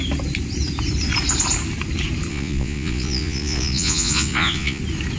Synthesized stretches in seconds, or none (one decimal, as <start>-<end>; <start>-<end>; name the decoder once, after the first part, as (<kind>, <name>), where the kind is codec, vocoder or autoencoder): 2.3-4.8 (vocoder, Vocos)